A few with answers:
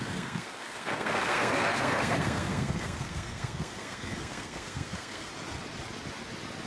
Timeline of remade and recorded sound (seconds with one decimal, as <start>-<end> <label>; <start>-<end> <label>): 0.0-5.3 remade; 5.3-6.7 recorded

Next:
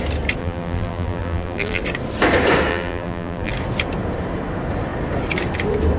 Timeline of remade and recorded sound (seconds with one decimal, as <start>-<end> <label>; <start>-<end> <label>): 0.0-0.4 recorded; 0.4-1.8 remade; 1.8-2.7 recorded; 2.7-3.5 remade; 3.5-6.0 recorded

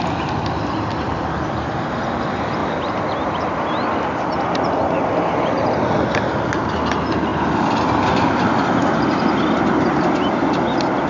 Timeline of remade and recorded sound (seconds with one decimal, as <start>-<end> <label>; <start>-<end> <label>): 0.0-11.1 recorded

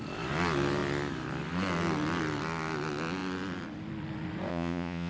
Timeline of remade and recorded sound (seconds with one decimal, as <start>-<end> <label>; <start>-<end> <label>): 0.0-4.5 recorded; 4.5-5.1 remade